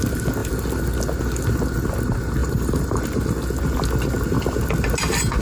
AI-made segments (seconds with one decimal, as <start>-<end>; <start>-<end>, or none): 2.4-3.2